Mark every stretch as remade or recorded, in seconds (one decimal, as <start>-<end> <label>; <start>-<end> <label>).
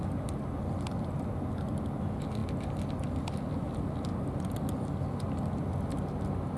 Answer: 0.0-6.6 recorded